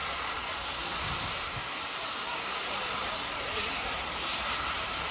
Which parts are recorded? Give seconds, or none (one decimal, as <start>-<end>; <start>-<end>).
0.8-5.1

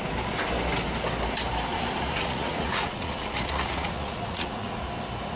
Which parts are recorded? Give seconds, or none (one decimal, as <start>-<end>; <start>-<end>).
0.0-1.7; 4.9-5.4

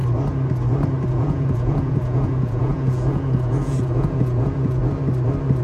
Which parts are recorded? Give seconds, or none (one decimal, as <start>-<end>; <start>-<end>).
0.0-1.1; 4.8-5.6

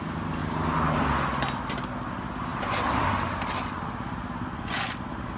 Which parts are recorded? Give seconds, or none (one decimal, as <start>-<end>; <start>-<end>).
0.0-5.4